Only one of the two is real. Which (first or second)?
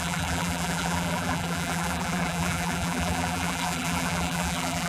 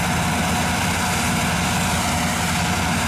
second